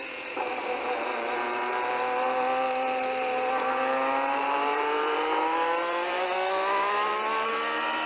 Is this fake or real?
fake